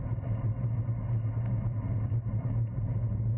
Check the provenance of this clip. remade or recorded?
recorded